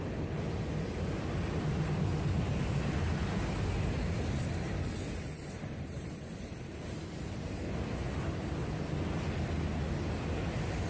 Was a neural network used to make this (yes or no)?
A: no